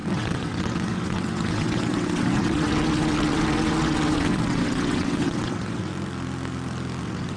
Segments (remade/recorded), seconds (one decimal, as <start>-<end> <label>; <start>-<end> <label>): 0.0-5.9 remade; 5.9-7.0 recorded; 7.0-7.4 remade